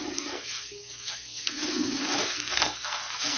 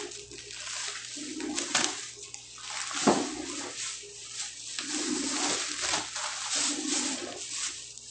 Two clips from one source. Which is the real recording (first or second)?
second